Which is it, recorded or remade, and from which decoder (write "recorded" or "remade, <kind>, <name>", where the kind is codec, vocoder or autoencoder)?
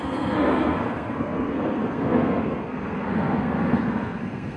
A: remade, codec, SNAC